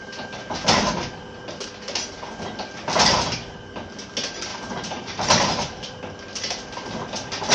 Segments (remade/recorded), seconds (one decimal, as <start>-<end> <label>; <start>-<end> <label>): 0.0-4.5 recorded; 4.5-6.0 remade; 6.0-7.5 recorded